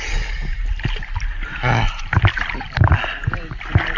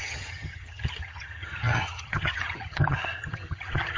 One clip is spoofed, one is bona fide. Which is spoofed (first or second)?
second